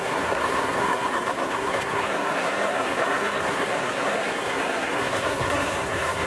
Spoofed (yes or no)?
yes